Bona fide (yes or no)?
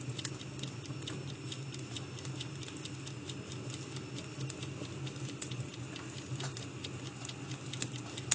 yes